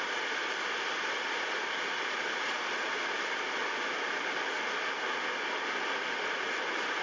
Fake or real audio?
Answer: real